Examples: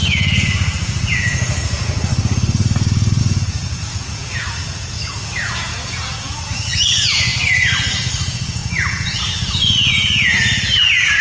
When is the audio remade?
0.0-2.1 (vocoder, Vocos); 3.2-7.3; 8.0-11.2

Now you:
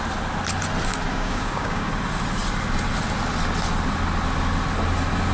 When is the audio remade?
1.1-1.9 (codec, DAC)